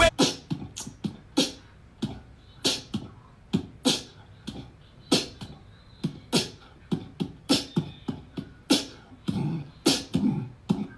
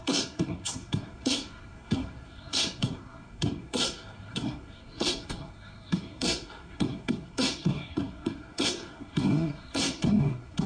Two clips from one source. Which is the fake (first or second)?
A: second